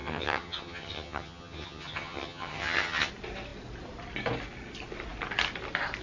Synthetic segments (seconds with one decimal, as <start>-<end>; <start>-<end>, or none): 0.0-3.1